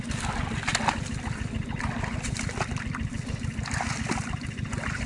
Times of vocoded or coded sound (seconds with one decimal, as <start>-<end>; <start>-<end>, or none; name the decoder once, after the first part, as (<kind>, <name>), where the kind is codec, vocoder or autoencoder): none